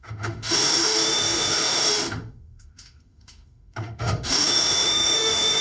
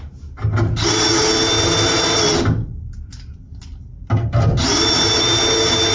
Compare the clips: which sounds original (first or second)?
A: second